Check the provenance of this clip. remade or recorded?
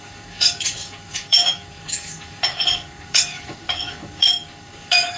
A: remade